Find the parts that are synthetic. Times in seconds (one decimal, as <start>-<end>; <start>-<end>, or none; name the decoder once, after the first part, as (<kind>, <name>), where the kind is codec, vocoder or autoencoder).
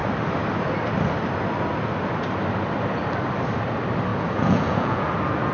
4.1-5.1 (vocoder, Vocos)